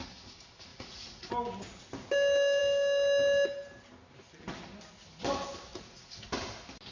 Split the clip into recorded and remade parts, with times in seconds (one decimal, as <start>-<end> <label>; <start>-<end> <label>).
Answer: 0.0-0.7 recorded; 0.7-1.3 remade; 1.3-5.7 recorded; 5.7-6.3 remade; 6.3-6.9 recorded